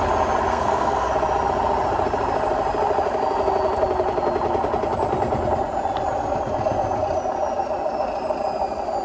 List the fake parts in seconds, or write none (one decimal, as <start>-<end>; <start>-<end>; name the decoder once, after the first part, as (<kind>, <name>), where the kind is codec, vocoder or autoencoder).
0.5-1.1 (codec, SNAC)